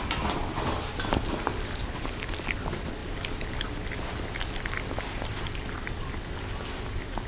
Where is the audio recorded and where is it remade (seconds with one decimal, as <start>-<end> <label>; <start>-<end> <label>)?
0.0-3.0 recorded; 3.0-3.5 remade; 3.5-7.3 recorded